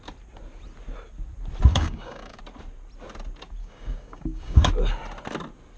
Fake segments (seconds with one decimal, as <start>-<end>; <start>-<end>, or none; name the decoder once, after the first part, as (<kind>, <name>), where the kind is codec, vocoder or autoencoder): 1.7-2.4 (codec, DAC); 3.6-4.7